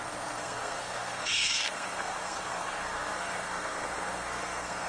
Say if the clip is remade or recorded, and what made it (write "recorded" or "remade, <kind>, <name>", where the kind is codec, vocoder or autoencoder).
remade, codec, SNAC